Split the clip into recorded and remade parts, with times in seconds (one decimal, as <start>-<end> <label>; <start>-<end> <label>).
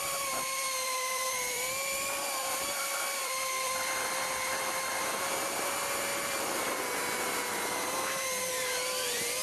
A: 0.0-6.1 remade; 6.1-8.5 recorded; 8.5-9.4 remade